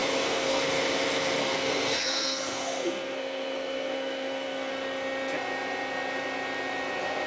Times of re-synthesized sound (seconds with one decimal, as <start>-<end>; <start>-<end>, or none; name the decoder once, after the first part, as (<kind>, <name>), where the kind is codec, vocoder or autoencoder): 0.0-0.6 (codec, SNAC); 1.4-4.7